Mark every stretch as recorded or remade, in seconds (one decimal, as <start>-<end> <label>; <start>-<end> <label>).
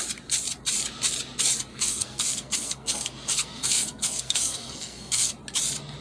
0.0-1.7 recorded; 1.7-5.3 remade; 5.3-6.0 recorded